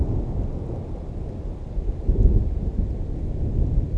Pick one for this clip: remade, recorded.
recorded